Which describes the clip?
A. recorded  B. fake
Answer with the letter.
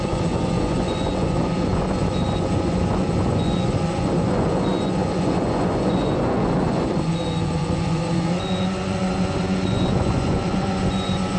B